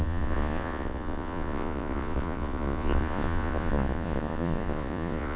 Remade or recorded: remade